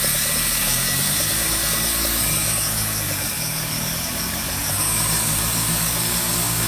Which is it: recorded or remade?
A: remade